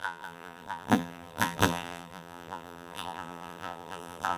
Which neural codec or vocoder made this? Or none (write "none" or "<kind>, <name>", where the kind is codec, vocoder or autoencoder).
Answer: vocoder, BigVGAN v2